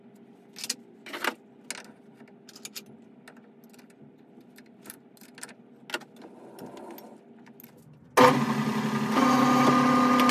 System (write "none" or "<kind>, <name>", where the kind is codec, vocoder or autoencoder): none